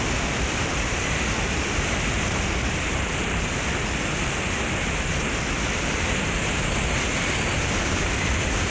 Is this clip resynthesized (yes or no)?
no